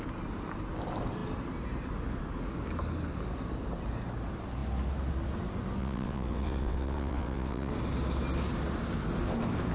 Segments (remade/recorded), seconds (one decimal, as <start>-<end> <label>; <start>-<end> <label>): 0.0-5.8 recorded; 5.8-7.7 remade; 7.7-9.7 recorded